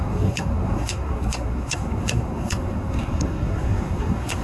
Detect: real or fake fake